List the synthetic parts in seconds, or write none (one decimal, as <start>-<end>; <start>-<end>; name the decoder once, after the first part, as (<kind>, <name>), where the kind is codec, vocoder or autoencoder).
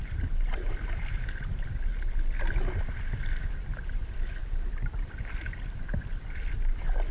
0.0-1.9 (vocoder, BigVGAN v2); 3.5-7.1